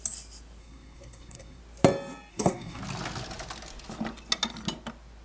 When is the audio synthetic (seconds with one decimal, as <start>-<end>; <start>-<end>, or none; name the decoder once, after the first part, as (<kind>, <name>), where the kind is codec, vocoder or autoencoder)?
0.6-1.6 (codec, SNAC); 2.3-2.8